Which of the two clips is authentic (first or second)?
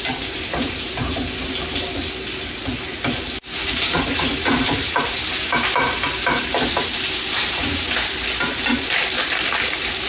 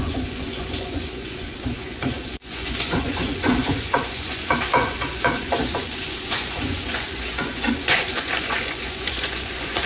first